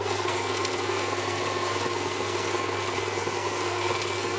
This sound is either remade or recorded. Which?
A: remade